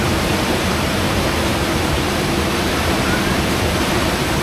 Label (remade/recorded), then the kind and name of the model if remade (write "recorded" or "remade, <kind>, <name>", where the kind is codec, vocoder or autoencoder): remade, vocoder, BigVGAN v2